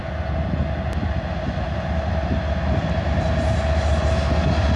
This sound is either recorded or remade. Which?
recorded